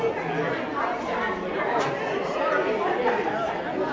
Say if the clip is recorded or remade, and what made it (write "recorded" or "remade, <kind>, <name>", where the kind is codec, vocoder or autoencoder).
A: recorded